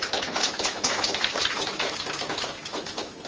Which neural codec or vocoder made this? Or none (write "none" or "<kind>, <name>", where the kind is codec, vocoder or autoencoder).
autoencoder, DAC-VAE